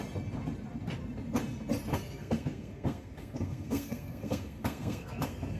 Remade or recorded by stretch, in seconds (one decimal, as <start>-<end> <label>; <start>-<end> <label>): 0.0-1.9 recorded; 1.9-5.6 remade